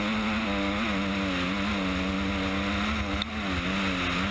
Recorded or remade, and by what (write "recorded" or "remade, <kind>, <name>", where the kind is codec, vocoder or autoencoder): recorded